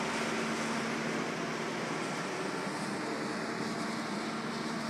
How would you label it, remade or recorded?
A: recorded